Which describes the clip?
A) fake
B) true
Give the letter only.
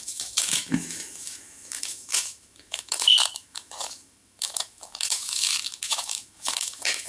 A